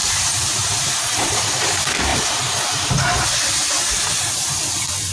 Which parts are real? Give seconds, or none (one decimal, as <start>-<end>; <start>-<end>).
1.2-5.1